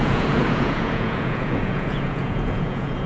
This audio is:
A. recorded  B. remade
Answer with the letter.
B